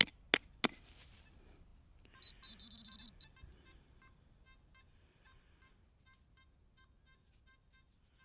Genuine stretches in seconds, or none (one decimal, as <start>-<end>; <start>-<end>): 0.0-8.2